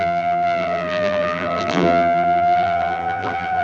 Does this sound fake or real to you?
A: fake